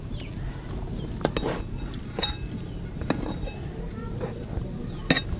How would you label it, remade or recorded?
recorded